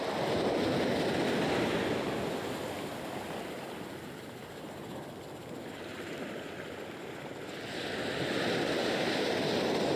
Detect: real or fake real